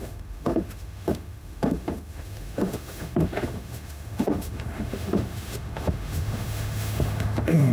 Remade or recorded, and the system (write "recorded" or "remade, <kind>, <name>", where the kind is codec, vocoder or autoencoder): remade, autoencoder, DAC-VAE